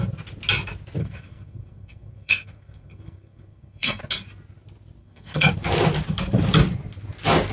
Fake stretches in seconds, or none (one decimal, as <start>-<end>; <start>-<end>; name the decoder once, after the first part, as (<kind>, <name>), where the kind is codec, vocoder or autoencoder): 1.0-4.0 (codec, SNAC); 5.0-5.5